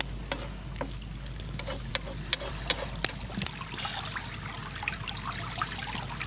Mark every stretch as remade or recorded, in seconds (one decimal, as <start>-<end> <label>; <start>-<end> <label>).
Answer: 0.0-6.3 recorded